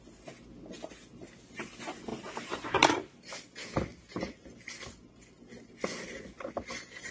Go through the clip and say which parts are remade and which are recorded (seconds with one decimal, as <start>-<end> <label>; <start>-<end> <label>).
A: 0.0-7.1 recorded